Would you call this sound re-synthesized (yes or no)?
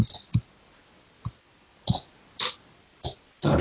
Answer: no